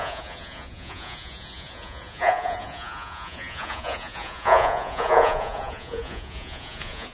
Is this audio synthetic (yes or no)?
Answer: yes